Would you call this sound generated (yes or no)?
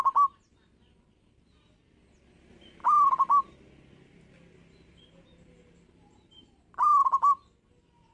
no